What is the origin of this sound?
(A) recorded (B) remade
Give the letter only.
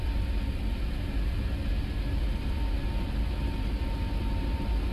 A